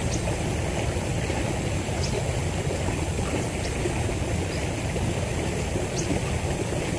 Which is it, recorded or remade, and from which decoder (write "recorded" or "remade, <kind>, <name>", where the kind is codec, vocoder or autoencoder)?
recorded